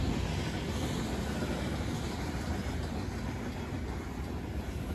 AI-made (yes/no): no